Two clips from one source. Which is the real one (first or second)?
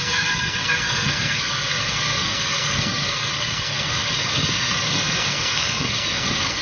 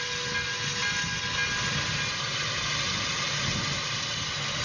second